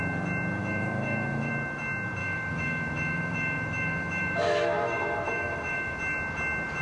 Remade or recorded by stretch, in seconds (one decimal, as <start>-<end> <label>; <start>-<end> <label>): 0.0-0.6 recorded; 0.6-1.5 remade; 1.5-2.2 recorded; 2.2-6.0 remade; 6.0-6.8 recorded